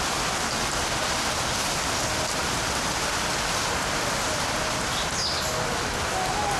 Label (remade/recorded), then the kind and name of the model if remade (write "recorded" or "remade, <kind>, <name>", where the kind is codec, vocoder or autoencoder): recorded